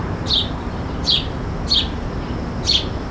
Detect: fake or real real